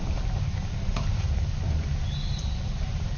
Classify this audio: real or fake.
fake